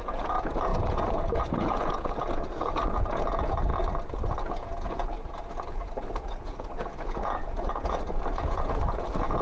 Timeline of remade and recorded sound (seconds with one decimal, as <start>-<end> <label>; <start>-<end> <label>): 0.0-3.7 remade; 3.7-4.4 recorded; 4.4-9.4 remade